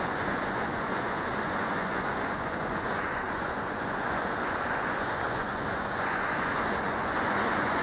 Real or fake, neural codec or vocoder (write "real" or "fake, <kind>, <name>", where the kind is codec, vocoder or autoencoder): fake, vocoder, Vocos